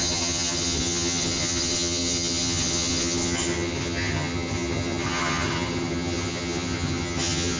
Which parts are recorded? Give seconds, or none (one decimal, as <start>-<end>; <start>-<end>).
none